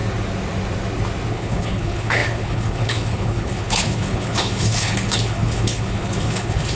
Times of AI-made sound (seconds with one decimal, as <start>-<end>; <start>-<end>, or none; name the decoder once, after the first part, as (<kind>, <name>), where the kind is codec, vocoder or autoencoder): 1.3-6.8 (codec, HILCodec)